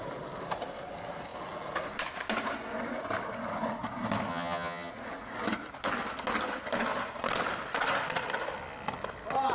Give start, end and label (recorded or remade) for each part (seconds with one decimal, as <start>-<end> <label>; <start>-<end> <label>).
0.0-4.3 recorded; 4.3-4.9 remade; 4.9-9.5 recorded